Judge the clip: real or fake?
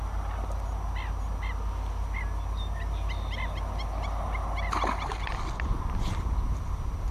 real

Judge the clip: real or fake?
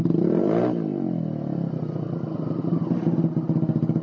real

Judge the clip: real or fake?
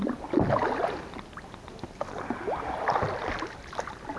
real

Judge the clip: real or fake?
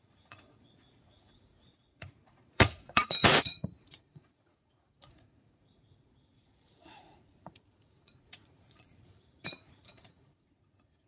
fake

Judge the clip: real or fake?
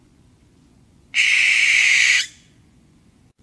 fake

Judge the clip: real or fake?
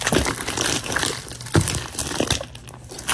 real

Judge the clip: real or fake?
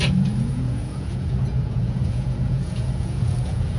fake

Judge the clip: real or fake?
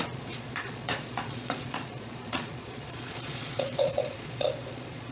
fake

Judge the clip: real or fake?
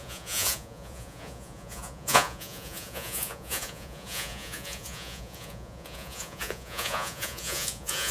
fake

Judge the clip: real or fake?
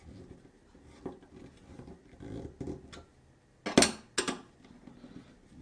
real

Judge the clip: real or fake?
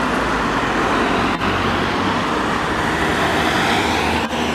real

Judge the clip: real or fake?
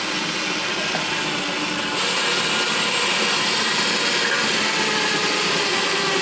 real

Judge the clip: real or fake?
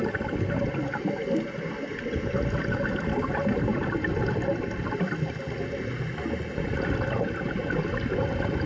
real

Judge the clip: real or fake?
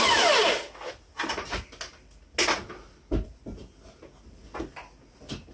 real